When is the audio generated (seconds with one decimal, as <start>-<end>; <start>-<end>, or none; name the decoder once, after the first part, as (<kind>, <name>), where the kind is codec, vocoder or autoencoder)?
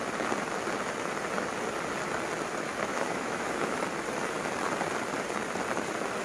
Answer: 2.9-3.8 (autoencoder, DAC-VAE)